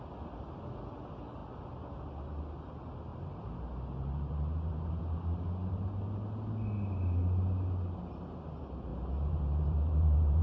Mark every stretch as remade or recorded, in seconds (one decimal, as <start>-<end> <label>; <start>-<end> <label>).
0.0-3.1 recorded; 3.1-5.0 remade; 5.0-8.9 recorded; 8.9-10.4 remade